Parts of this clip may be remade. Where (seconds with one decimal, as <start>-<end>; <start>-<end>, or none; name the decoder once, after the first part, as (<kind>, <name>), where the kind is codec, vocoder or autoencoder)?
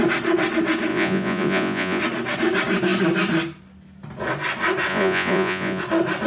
0.9-2.0 (vocoder, Vocos); 4.9-5.8